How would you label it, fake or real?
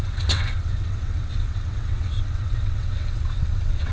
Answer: fake